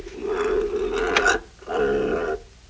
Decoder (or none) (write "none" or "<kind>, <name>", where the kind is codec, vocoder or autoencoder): none